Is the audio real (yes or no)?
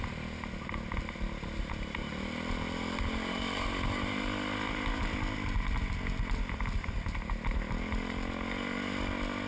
yes